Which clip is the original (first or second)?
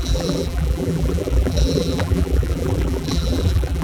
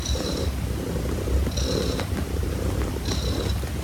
second